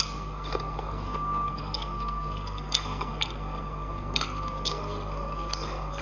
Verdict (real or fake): fake